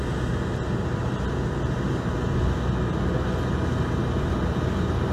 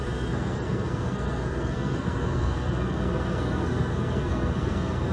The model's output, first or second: second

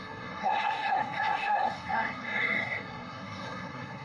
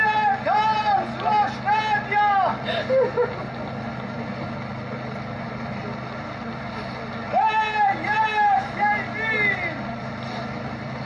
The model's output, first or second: first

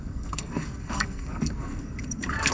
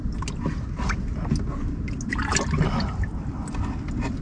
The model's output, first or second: first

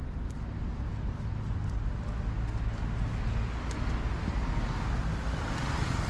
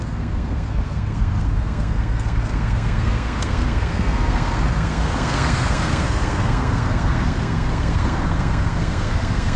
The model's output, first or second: second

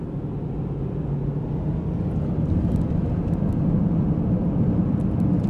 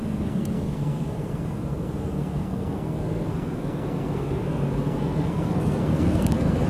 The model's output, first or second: second